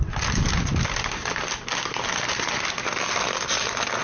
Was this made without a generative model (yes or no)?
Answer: yes